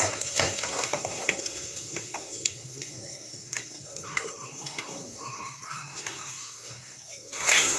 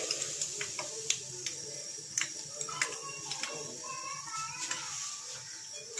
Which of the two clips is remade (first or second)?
first